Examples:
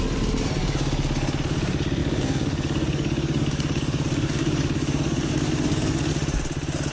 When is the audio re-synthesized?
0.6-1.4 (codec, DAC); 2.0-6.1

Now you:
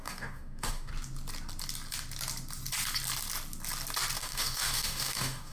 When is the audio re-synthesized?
0.0-0.9 (codec, DAC); 4.2-5.5

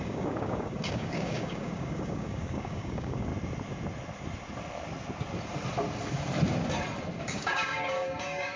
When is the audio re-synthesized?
0.0-3.3 (codec, DAC); 7.2-8.6

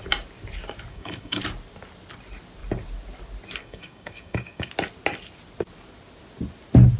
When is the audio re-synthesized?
0.9-1.4 (codec, DAC); 3.6-4.7

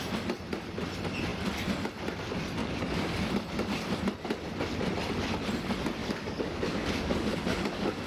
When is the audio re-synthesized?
2.6-3.3 (codec, DAC); 6.0-8.1

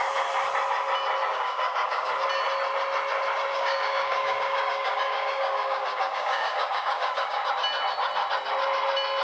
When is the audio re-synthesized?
1.3-2.1 (codec, DAC); 3.5-7.5

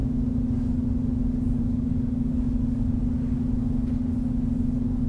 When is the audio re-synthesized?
1.6-3.0 (codec, DAC)

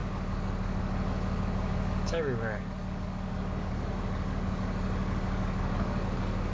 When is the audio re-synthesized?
0.0-6.5 (codec, DAC)